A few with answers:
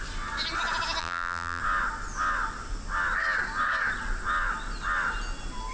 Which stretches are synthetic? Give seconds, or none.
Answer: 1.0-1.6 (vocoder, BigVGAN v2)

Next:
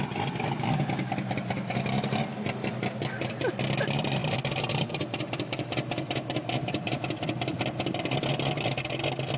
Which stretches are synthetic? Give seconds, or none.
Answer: 4.2-7.0 (vocoder, BigVGAN v2)